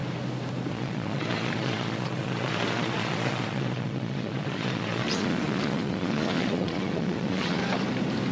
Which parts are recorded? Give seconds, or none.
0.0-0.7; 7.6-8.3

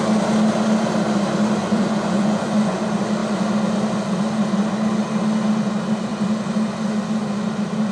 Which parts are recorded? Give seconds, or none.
0.0-1.6; 2.8-7.9

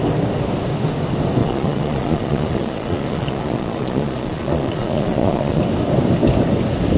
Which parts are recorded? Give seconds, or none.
0.0-1.4; 5.6-7.0

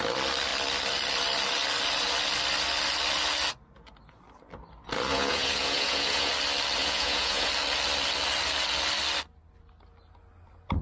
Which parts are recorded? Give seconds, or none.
0.0-5.1; 6.3-6.8; 7.5-10.8

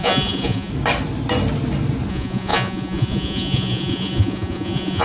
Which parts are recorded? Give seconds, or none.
0.7-2.1

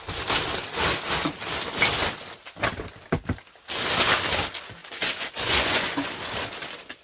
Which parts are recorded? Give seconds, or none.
0.0-4.8; 6.1-7.0

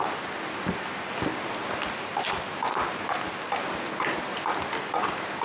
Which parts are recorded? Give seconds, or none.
0.0-5.4

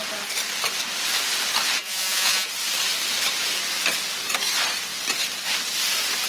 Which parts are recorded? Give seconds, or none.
0.0-1.8; 2.5-6.3